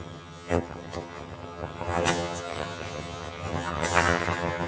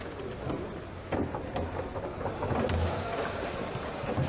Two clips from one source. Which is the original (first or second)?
second